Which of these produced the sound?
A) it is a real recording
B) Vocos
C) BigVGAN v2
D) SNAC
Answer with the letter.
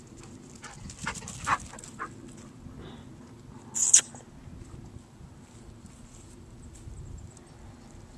A